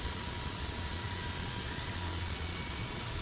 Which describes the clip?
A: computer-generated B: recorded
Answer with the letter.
A